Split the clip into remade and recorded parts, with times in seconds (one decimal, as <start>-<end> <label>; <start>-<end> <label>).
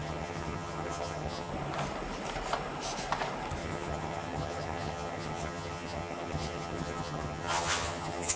0.0-1.5 remade; 1.5-3.6 recorded; 3.6-8.4 remade